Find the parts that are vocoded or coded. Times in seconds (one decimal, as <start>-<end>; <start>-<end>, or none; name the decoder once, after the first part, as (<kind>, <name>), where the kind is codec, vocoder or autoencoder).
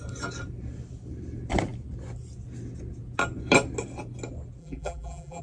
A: 4.6-5.4 (vocoder, BigVGAN v2)